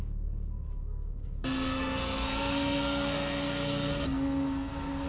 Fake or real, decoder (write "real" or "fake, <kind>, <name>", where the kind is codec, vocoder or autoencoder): fake, codec, SNAC